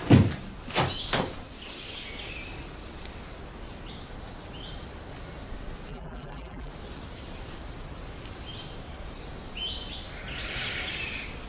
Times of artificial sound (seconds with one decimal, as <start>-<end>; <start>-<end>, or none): 5.9-6.7